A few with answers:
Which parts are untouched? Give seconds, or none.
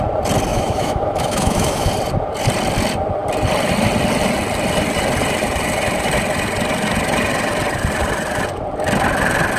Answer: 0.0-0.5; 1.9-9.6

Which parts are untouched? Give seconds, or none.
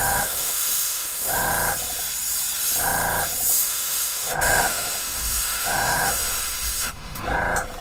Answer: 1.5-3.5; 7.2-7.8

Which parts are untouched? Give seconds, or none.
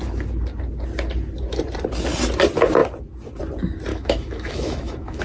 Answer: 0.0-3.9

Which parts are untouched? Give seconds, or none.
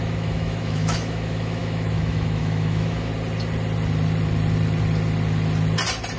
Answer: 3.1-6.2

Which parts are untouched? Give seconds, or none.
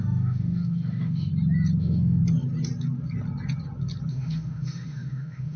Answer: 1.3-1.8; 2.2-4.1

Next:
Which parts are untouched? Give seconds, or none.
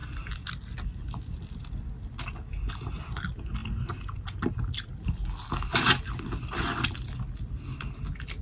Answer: 0.0-8.4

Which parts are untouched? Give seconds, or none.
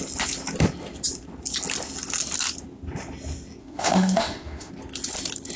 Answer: 0.0-3.6; 4.7-5.6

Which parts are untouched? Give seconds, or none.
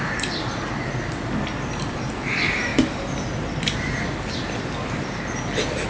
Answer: 0.0-5.9